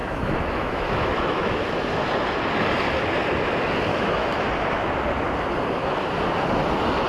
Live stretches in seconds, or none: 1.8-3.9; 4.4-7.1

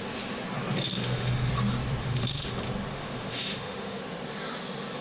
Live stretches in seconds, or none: 0.0-0.9; 1.5-2.0; 2.5-2.9; 4.0-5.0

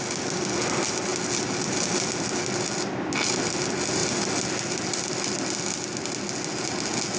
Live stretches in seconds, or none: 0.0-7.2